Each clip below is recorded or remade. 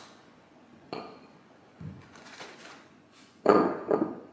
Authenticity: remade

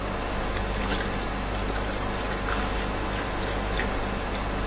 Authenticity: recorded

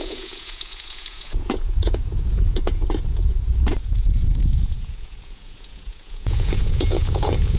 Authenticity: remade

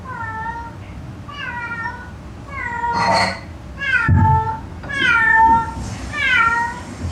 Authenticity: recorded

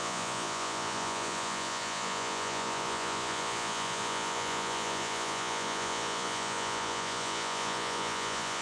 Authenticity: remade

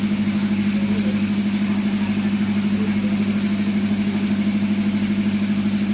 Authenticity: recorded